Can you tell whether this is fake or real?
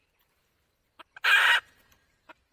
real